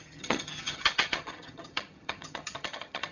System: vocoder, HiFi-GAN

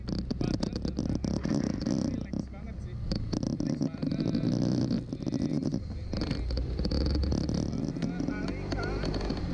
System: none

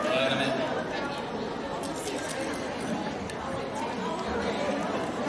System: none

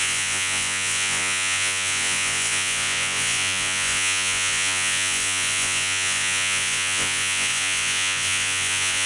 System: vocoder, Vocos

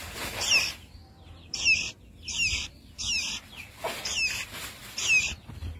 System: none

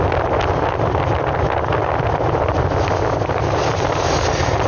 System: none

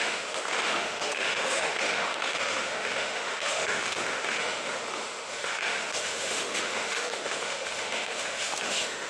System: autoencoder, DAC-VAE